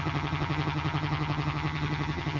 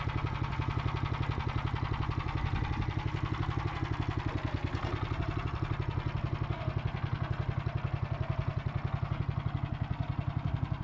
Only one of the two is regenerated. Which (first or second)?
first